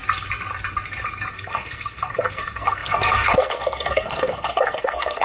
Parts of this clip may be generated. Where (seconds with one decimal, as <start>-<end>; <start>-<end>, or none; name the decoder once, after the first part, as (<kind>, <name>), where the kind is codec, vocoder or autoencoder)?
1.3-5.2 (codec, SNAC)